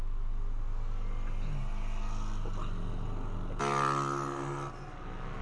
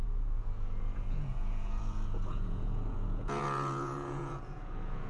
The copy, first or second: second